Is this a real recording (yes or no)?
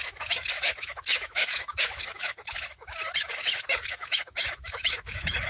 no